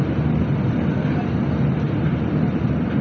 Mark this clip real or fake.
real